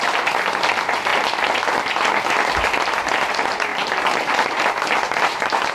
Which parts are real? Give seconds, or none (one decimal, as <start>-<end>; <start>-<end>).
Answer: 0.0-5.7